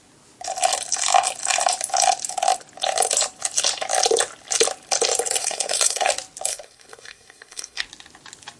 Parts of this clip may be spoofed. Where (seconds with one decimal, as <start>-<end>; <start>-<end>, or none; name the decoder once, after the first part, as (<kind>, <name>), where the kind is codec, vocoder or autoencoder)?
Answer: 5.4-6.1 (codec, SNAC); 6.5-7.8